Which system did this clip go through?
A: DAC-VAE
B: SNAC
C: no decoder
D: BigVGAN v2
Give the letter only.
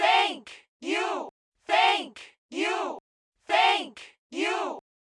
C